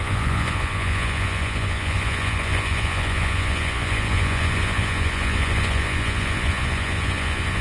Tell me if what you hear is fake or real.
fake